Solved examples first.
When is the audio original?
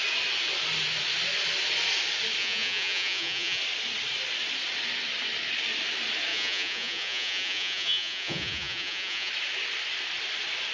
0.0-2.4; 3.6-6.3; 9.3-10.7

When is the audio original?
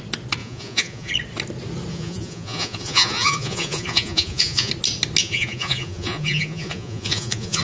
0.0-0.4; 1.1-1.9; 4.7-5.2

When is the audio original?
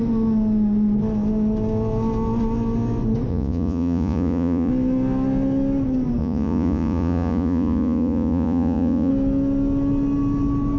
0.0-3.3; 4.7-6.2; 9.1-10.8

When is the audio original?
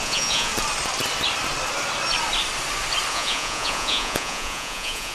0.5-3.1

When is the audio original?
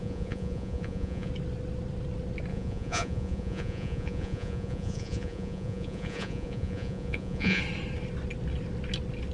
1.3-2.5; 7.6-9.3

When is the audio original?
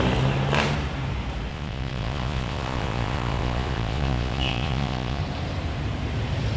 0.0-1.5; 5.2-6.6